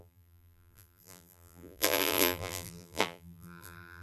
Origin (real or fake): fake